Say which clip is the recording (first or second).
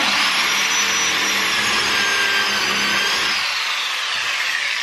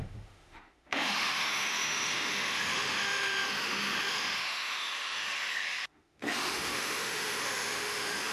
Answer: first